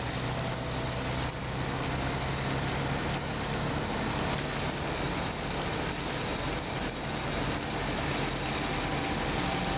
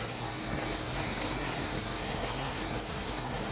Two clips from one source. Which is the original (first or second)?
first